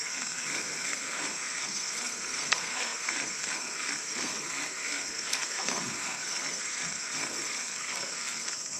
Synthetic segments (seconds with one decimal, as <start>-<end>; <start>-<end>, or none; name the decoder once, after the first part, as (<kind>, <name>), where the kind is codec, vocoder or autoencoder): 0.0-8.8 (codec, SNAC)